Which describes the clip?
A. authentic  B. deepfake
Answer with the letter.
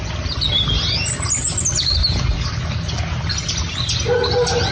A